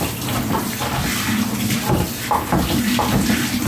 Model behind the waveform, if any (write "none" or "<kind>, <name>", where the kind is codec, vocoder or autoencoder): none